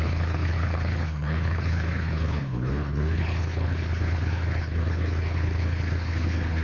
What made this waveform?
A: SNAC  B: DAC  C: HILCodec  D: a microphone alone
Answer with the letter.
C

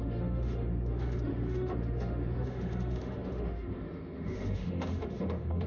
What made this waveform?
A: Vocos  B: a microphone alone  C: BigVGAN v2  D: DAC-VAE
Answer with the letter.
D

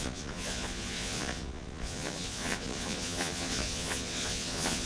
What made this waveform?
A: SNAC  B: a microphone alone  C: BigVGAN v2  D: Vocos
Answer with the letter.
D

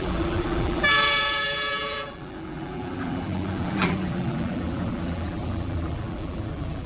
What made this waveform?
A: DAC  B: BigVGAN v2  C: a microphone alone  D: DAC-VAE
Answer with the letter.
B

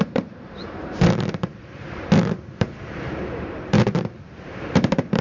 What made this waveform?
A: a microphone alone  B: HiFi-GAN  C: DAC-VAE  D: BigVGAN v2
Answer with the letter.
D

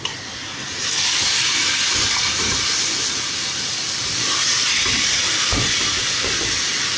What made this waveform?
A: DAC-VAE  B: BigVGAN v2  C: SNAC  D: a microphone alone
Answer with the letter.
B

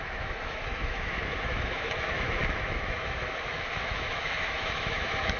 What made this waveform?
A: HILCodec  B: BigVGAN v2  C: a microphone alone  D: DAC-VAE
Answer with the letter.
D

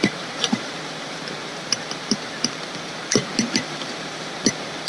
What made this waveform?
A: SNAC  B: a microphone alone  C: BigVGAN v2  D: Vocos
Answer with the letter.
C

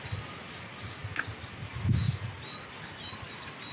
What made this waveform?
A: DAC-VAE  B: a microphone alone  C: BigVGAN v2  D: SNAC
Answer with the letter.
B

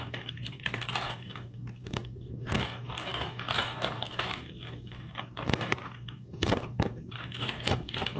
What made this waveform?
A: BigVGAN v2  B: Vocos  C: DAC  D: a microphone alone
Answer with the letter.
C